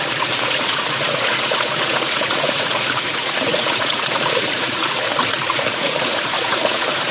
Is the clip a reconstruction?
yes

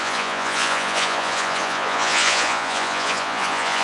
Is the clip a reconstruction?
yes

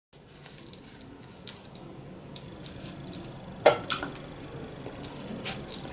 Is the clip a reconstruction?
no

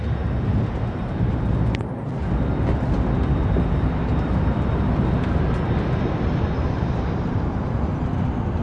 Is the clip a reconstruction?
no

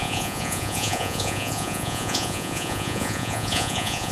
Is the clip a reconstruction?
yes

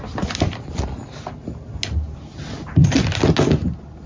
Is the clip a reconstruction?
no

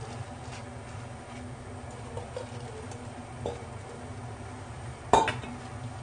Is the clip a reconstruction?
no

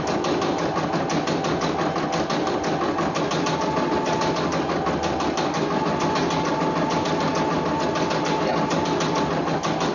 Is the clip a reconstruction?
no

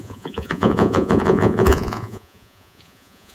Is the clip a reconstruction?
yes